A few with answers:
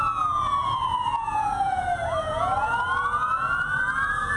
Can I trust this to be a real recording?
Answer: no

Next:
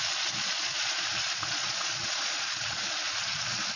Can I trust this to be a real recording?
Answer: no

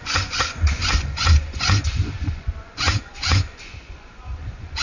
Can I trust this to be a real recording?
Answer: no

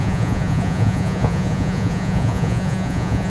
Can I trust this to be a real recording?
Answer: no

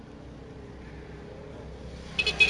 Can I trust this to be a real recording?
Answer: yes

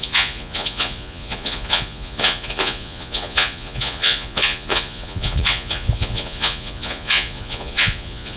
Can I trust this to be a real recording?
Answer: no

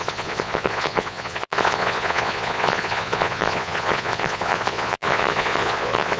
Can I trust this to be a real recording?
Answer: no